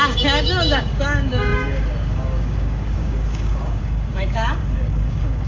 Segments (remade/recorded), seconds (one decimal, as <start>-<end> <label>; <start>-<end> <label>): 0.0-5.5 remade